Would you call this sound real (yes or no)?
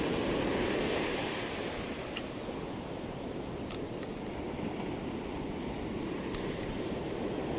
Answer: yes